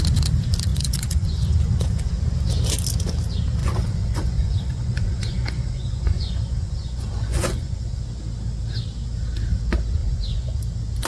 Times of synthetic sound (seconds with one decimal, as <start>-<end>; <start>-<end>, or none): 0.7-2.1; 3.6-8.0; 10.0-10.6